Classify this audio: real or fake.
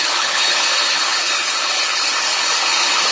fake